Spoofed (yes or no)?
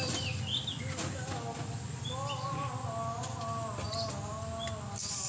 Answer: no